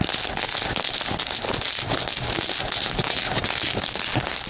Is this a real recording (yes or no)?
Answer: yes